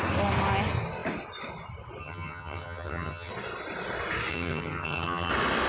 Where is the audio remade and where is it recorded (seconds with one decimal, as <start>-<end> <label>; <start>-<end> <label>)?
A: 0.0-2.0 recorded; 2.0-3.3 remade; 3.3-4.3 recorded; 4.3-5.3 remade; 5.3-5.7 recorded